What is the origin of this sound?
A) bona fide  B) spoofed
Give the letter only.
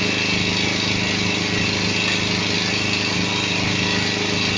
A